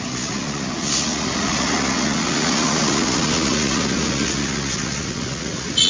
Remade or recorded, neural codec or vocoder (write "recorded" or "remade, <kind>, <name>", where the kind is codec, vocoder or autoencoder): remade, vocoder, Vocos